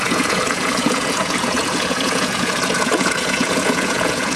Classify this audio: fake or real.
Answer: fake